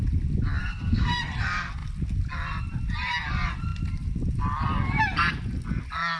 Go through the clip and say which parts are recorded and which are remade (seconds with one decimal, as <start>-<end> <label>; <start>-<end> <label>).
0.0-0.6 recorded; 0.6-1.2 remade; 1.2-6.2 recorded